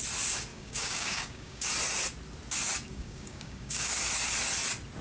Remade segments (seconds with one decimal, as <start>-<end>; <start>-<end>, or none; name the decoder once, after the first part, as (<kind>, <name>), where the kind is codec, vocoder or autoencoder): 0.5-1.7 (codec, DAC); 2.9-3.9